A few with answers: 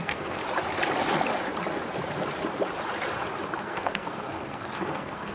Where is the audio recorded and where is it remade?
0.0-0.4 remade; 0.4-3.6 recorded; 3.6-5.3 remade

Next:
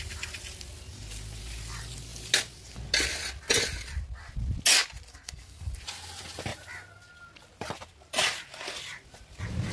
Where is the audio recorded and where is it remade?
0.0-5.1 recorded; 5.1-5.7 remade; 5.7-9.7 recorded

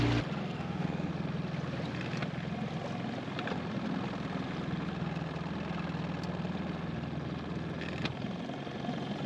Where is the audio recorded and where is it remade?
0.0-0.4 recorded; 0.4-1.1 remade; 1.1-9.3 recorded

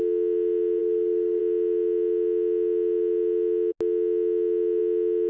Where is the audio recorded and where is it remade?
0.0-0.8 recorded; 0.8-1.4 remade; 1.4-5.3 recorded

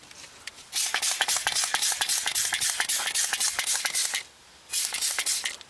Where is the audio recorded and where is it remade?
0.0-5.7 recorded

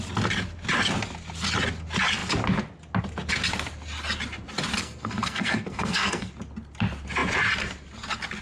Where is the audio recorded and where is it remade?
0.0-4.8 recorded; 4.8-6.3 remade; 6.3-8.4 recorded

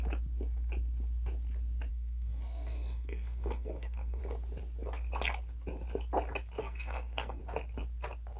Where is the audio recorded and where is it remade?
0.0-1.9 recorded; 1.9-4.2 remade; 4.2-6.6 recorded; 6.6-7.4 remade; 7.4-8.4 recorded

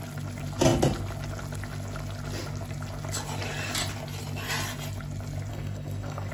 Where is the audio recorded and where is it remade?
0.0-5.5 recorded; 5.5-6.3 remade